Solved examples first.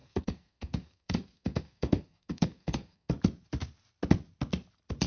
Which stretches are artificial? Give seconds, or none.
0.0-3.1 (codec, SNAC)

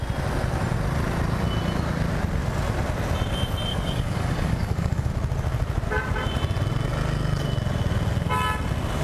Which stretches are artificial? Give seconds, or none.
3.7-5.1 (codec, DAC)

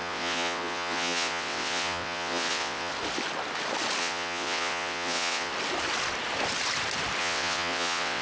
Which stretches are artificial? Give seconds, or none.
0.0-2.9 (vocoder, WaveNeXt); 4.0-5.5; 7.2-8.2

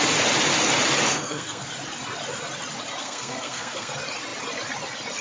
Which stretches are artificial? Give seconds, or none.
1.1-1.7 (codec, SNAC); 3.0-3.9